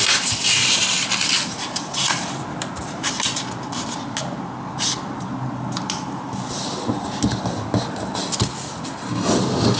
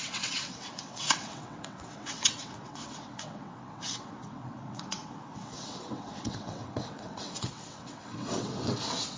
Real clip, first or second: first